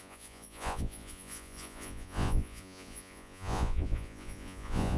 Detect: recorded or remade remade